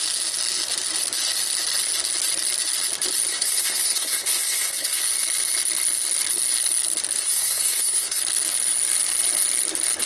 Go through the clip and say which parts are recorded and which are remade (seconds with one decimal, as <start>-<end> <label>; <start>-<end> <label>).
0.0-3.3 recorded; 3.3-5.0 remade; 5.0-7.2 recorded; 7.2-8.2 remade; 8.2-10.1 recorded